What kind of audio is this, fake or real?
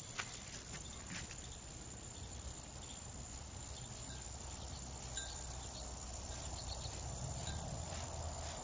real